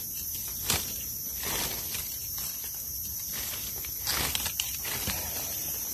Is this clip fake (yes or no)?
no